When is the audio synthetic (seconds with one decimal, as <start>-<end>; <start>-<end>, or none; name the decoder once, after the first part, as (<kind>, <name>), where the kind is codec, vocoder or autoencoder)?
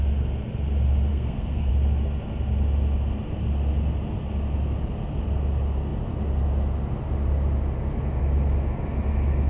1.1-1.7 (codec, SNAC)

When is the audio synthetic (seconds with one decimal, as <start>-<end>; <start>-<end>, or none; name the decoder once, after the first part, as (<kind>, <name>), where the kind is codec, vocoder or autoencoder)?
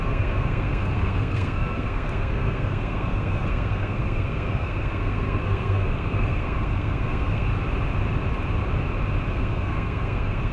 0.0-7.5 (codec, SNAC); 9.3-10.5